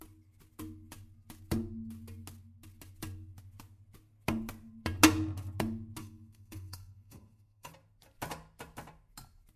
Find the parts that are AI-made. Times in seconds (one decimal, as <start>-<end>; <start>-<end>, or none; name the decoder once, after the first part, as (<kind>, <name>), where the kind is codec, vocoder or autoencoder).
6.0-7.7 (codec, SNAC)